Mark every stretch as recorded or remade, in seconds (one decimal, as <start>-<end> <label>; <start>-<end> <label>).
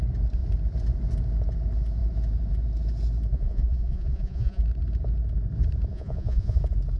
0.0-3.3 recorded; 3.3-4.6 remade; 4.6-5.9 recorded; 5.9-6.6 remade; 6.6-7.0 recorded